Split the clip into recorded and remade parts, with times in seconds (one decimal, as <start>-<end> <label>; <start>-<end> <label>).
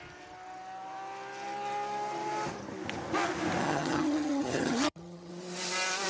0.0-3.6 recorded; 3.6-5.3 remade; 5.3-6.1 recorded